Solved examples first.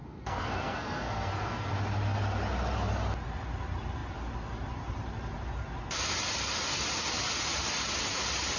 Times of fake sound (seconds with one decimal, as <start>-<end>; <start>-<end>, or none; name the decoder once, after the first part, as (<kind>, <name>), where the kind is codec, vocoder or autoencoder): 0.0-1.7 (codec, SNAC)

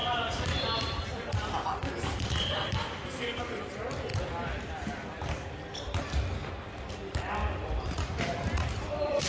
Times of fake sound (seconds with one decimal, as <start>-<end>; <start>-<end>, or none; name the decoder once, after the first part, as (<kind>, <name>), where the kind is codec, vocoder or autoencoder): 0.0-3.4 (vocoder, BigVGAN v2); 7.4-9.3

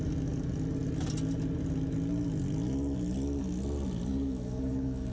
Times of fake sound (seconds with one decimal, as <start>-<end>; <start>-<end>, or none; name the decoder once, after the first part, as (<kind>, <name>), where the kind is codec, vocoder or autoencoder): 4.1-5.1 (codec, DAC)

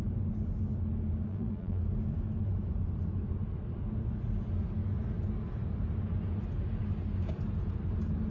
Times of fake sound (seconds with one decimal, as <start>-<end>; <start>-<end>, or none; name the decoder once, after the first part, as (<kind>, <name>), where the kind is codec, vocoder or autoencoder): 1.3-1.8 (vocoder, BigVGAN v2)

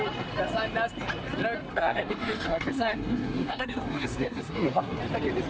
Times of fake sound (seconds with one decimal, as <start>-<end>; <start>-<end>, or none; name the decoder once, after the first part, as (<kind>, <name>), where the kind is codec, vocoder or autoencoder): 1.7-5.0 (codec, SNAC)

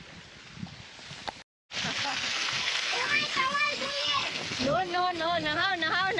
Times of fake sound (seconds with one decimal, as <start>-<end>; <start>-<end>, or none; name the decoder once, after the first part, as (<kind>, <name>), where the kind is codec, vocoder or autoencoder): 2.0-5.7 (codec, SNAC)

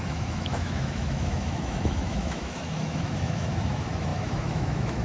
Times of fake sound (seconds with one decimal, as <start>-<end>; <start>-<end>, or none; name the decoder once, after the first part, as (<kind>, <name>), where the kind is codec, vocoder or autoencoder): 0.0-5.0 (autoencoder, DAC-VAE)

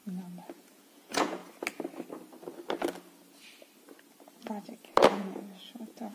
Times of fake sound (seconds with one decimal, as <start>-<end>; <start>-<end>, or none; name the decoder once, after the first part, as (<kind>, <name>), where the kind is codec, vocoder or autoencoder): 0.5-1.4 (vocoder, Vocos); 5.0-6.1